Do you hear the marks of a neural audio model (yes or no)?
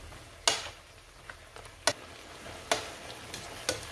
no